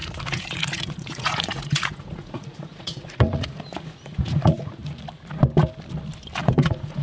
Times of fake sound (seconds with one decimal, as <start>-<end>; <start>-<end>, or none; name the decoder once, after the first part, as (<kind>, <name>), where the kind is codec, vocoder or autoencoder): 0.0-4.8 (vocoder, Vocos); 6.4-7.0

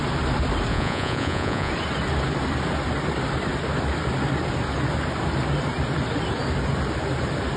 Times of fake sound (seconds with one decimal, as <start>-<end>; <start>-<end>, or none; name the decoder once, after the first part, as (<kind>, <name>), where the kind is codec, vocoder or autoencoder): 0.7-1.7 (vocoder, Vocos)

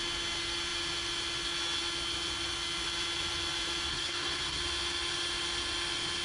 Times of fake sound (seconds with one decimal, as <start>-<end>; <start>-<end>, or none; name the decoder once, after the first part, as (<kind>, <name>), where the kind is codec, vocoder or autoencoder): 3.9-4.6 (codec, SNAC)

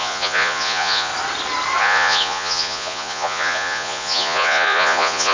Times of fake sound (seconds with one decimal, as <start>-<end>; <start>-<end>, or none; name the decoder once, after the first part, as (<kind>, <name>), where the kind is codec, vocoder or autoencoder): 0.0-1.1 (vocoder, Vocos); 1.8-5.3

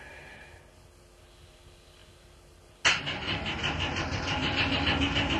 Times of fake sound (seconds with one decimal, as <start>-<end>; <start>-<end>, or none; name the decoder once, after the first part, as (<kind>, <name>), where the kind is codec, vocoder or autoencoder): none